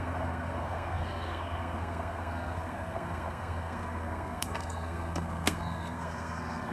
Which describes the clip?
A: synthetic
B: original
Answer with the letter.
A